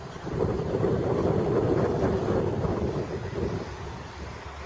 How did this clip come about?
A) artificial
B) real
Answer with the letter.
B